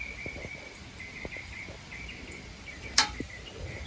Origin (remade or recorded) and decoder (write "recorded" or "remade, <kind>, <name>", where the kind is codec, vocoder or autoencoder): remade, vocoder, BigVGAN v2